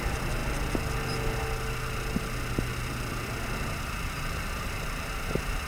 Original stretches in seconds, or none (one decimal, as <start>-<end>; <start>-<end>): 0.4-3.8